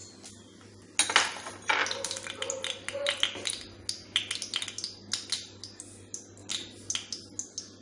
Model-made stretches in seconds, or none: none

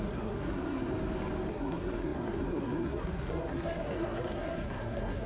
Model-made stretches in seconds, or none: 0.0-0.9 (codec, SNAC); 1.5-5.3

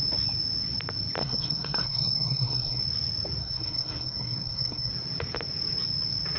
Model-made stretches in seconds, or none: 1.2-2.8 (codec, SNAC); 3.4-4.9